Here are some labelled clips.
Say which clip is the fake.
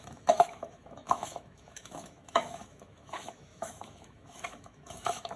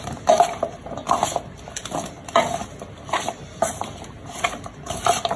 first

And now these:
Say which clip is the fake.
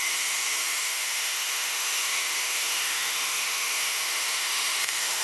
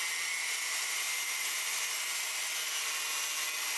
first